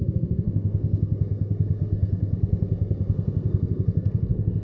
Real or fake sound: fake